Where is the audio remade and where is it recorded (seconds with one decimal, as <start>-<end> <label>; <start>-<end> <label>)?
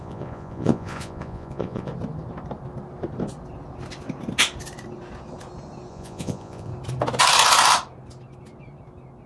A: 0.0-1.9 remade; 1.9-5.9 recorded; 5.9-6.7 remade; 6.7-9.3 recorded